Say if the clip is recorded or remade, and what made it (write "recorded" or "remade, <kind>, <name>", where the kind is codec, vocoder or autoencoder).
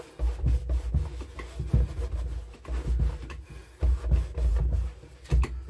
recorded